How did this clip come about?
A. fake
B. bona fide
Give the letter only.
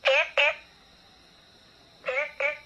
B